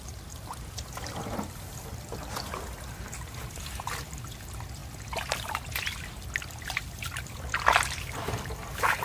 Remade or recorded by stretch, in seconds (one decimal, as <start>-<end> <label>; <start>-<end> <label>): 0.0-9.0 recorded